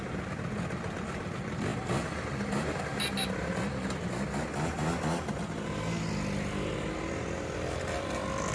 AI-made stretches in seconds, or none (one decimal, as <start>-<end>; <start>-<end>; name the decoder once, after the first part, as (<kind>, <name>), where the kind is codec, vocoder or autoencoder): none

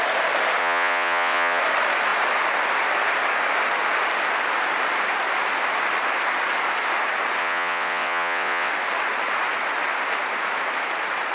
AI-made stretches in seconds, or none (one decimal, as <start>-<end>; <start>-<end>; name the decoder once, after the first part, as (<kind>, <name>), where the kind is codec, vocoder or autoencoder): 0.6-1.6 (vocoder, WaveNeXt); 7.4-8.7